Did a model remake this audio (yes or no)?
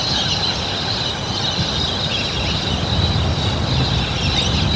no